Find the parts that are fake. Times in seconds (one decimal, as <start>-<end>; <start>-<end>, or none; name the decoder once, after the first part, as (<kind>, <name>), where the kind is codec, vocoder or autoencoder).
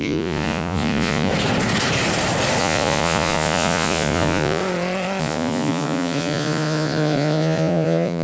0.0-1.3 (vocoder, Vocos); 2.6-4.6; 5.2-8.2